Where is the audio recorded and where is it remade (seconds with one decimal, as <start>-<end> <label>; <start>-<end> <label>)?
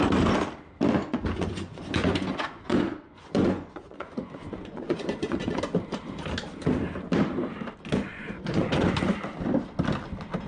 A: 0.0-1.0 recorded; 1.0-5.6 remade; 5.6-8.1 recorded; 8.1-8.9 remade; 8.9-10.5 recorded